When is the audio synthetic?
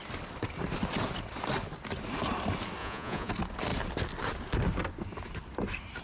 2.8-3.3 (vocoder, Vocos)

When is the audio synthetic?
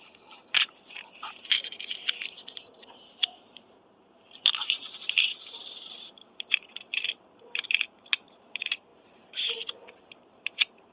0.0-10.9 (vocoder, BigVGAN v2)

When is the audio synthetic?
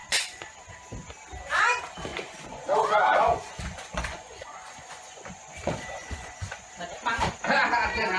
0.0-0.7 (vocoder, Vocos); 2.1-6.7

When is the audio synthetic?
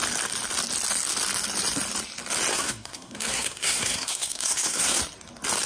2.5-5.0 (codec, SNAC)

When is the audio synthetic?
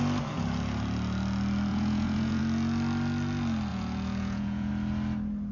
1.7-2.4 (vocoder, Vocos); 3.7-4.7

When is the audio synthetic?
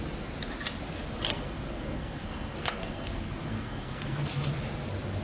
1.3-4.3 (codec, SNAC)